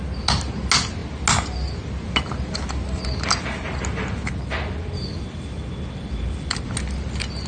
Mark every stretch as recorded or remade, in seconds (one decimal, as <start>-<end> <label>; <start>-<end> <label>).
0.0-7.5 recorded